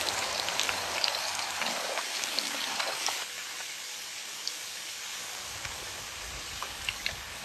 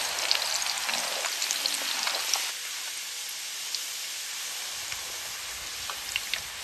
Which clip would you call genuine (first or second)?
second